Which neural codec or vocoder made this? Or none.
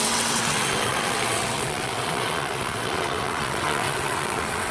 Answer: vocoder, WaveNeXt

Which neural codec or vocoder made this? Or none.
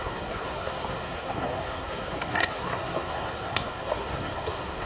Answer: codec, SNAC